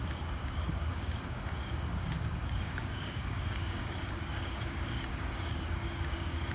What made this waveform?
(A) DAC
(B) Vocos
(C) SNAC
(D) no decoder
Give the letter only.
A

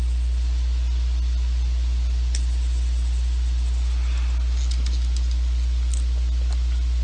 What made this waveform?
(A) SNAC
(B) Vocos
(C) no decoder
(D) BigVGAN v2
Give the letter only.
C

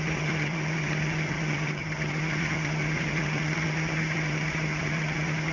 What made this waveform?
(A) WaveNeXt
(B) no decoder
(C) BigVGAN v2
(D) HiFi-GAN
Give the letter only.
D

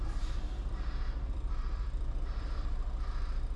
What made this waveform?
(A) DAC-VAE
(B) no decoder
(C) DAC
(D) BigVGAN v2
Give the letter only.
B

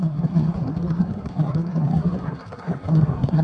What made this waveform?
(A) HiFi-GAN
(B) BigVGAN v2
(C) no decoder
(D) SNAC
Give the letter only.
D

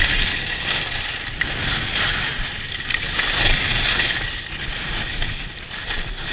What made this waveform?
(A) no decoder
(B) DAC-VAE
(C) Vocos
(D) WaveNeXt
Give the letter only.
A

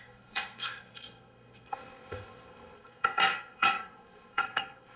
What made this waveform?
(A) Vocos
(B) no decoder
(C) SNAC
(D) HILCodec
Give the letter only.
C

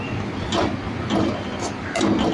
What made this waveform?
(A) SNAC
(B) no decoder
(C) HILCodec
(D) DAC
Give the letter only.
B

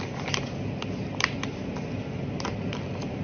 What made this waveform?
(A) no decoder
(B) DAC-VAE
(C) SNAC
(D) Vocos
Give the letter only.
A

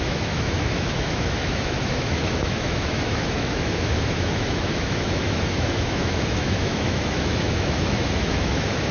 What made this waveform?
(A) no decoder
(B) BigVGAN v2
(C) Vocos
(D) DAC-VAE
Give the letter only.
D